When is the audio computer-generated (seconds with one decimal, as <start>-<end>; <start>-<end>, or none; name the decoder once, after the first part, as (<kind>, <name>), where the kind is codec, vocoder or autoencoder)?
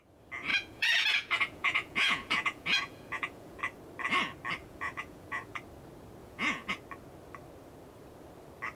0.5-3.6 (vocoder, Vocos); 4.6-5.6; 6.2-6.8